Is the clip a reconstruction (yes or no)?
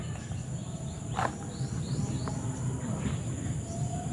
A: no